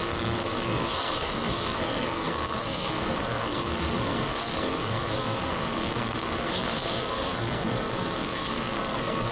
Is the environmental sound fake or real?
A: fake